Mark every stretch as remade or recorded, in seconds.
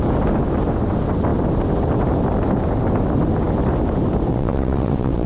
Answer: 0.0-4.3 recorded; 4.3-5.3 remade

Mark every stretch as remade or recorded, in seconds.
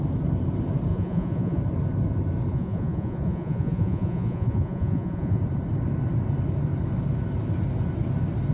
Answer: 0.0-0.9 recorded; 0.9-1.6 remade; 1.6-2.5 recorded; 2.5-5.4 remade; 5.4-8.5 recorded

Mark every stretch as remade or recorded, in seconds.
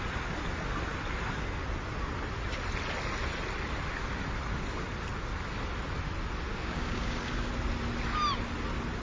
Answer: 0.0-6.5 recorded; 6.5-7.5 remade; 7.5-9.0 recorded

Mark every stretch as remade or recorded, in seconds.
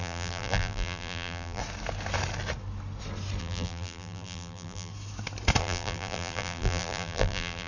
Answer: 0.0-1.6 remade; 1.6-3.4 recorded; 3.4-4.9 remade; 4.9-5.6 recorded; 5.6-7.7 remade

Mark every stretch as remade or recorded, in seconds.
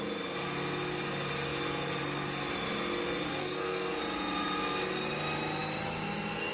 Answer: 0.0-3.4 recorded; 3.4-4.0 remade; 4.0-6.5 recorded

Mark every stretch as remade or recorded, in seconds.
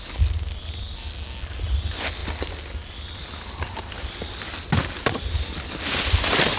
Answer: 0.0-6.6 recorded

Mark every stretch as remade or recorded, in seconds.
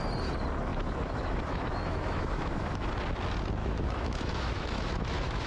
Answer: 0.0-0.7 recorded; 0.7-2.9 remade; 2.9-3.6 recorded; 3.6-5.5 remade